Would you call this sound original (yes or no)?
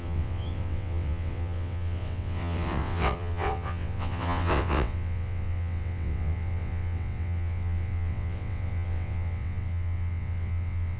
no